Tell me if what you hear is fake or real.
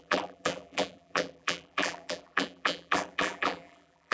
fake